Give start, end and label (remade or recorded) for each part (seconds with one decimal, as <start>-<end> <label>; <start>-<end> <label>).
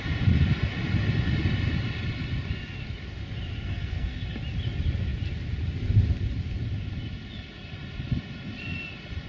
0.0-3.5 recorded; 3.5-4.4 remade; 4.4-9.3 recorded